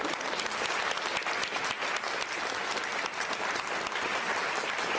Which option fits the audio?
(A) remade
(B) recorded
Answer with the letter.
B